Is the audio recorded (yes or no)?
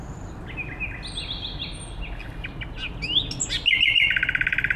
yes